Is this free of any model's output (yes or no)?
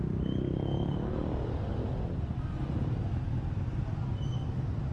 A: yes